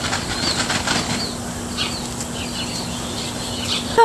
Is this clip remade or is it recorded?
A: recorded